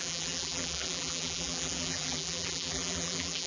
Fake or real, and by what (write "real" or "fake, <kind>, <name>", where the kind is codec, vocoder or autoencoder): fake, vocoder, BigVGAN v2